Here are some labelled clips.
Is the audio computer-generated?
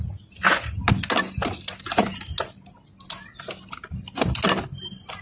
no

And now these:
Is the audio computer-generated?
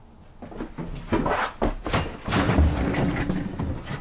no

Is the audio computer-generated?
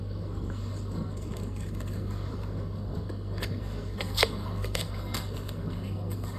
yes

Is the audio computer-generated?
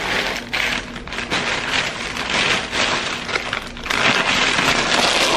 no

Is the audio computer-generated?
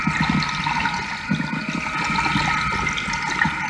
no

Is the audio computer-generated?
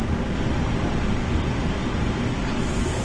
no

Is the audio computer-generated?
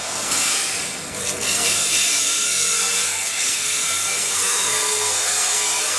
yes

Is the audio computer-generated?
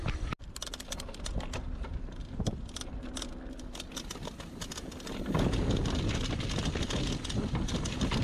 no